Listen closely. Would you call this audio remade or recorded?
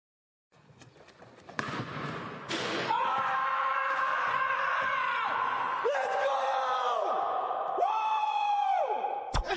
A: remade